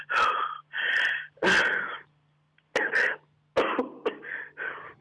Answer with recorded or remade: recorded